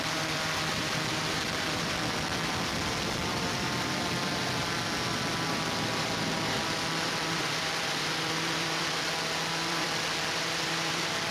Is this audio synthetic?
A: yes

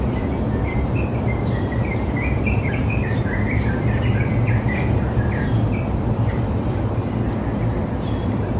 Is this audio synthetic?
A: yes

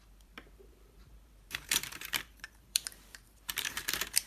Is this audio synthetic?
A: yes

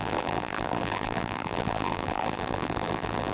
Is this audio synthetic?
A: yes